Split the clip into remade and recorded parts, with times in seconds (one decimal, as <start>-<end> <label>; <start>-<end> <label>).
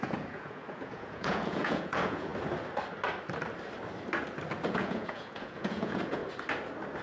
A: 0.0-2.3 remade; 2.3-4.7 recorded; 4.7-6.2 remade; 6.2-7.0 recorded